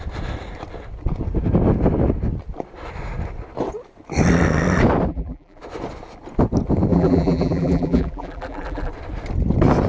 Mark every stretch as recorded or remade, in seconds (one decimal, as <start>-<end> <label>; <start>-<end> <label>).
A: 0.0-5.1 recorded; 5.1-5.6 remade; 5.6-6.9 recorded; 6.9-8.9 remade; 8.9-9.9 recorded